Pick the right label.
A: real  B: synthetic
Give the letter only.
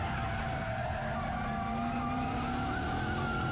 A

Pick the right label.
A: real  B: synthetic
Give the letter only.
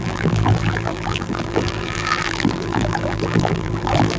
B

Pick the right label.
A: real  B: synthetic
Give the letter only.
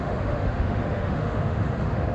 B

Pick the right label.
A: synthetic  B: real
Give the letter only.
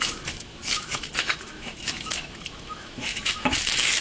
A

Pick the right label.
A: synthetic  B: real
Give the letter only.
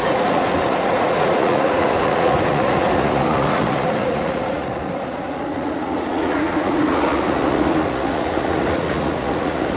A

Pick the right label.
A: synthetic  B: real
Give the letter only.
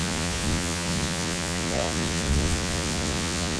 A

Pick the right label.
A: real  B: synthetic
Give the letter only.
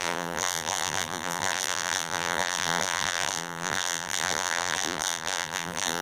B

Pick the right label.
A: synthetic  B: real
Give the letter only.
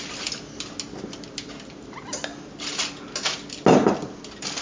B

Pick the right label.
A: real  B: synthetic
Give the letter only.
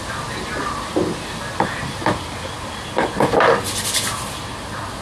A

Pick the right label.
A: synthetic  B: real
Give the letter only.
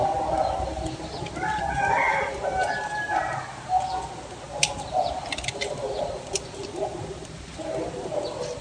B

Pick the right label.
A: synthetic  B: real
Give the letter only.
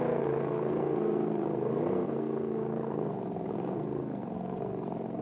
A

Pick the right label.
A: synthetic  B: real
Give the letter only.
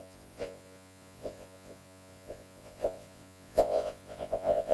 A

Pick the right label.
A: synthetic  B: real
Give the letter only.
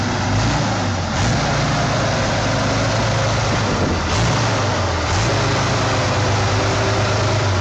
B